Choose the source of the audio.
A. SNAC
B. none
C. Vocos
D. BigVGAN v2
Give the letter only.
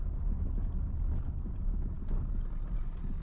B